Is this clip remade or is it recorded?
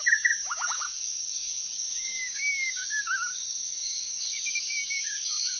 remade